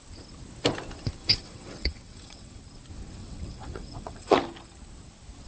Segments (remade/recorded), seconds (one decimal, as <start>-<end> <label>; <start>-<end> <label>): 0.0-1.2 recorded; 1.2-2.6 remade; 2.6-3.2 recorded; 3.2-4.4 remade; 4.4-5.5 recorded